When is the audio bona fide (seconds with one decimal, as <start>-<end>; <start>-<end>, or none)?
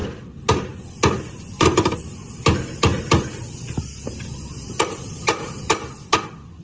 0.0-6.6